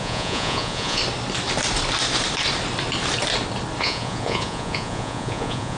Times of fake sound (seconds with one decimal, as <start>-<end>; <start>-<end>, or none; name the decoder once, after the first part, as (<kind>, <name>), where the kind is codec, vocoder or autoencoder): 0.0-1.0 (vocoder, Vocos); 3.8-5.8